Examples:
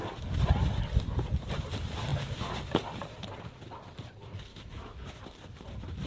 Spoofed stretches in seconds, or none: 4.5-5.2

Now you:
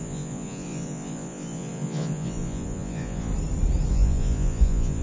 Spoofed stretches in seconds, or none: 0.0-3.3; 3.9-5.0

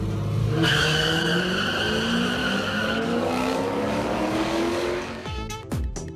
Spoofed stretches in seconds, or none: 0.4-1.4; 2.4-5.7